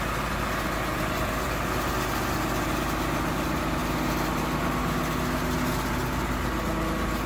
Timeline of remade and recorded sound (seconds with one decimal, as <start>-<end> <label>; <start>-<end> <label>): 0.0-7.3 recorded